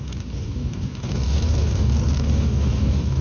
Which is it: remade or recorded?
remade